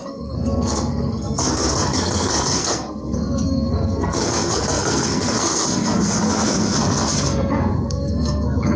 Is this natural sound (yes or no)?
no